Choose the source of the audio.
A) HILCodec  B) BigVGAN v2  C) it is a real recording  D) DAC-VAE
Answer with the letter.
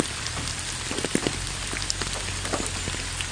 C